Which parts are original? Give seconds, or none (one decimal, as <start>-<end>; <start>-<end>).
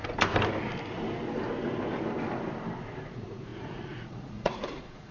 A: 0.0-3.1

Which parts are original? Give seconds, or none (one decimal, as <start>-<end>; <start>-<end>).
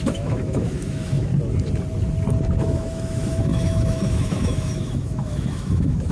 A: 1.3-2.6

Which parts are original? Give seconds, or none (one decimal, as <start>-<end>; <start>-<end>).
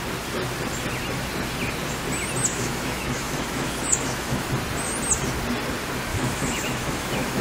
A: 0.0-2.5; 4.5-6.1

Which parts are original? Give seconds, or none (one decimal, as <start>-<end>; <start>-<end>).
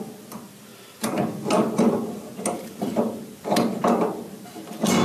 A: 0.0-5.0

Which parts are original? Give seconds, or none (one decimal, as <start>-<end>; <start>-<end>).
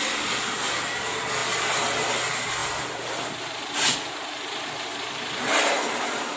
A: 0.0-2.6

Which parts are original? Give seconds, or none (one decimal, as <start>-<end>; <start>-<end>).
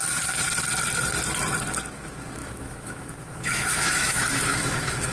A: 0.0-1.9